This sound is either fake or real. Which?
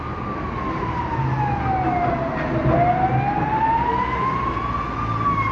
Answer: real